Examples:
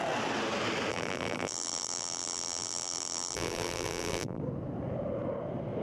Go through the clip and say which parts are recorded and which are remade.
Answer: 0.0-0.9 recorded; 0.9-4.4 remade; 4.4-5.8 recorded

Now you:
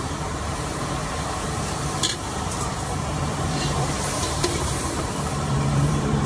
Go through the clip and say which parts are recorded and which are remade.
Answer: 0.0-1.0 recorded; 1.0-4.8 remade; 4.8-5.3 recorded; 5.3-6.3 remade

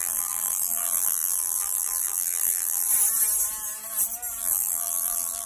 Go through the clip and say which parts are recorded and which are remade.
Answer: 0.0-2.9 remade; 2.9-4.4 recorded; 4.4-5.5 remade

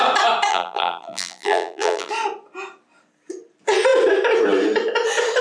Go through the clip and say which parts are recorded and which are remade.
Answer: 0.0-0.5 recorded; 0.5-2.1 remade; 2.1-5.4 recorded

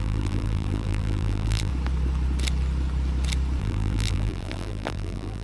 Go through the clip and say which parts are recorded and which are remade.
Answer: 0.0-1.7 remade; 1.7-3.6 recorded; 3.6-5.4 remade

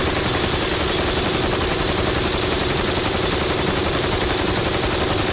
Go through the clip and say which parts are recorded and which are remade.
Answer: 0.0-1.7 recorded; 1.7-4.7 remade; 4.7-5.3 recorded